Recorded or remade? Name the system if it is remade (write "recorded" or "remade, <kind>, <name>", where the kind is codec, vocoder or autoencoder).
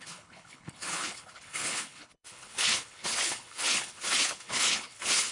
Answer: remade, codec, HILCodec